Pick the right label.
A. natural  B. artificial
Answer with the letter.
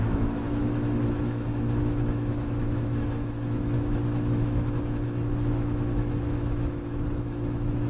B